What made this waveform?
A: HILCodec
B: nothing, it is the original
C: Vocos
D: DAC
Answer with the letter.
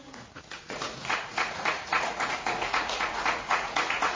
C